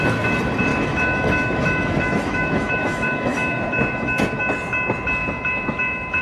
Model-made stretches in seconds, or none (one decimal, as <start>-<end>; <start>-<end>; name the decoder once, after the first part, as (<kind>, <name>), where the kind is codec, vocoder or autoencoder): 0.7-4.4 (autoencoder, DAC-VAE); 5.2-6.2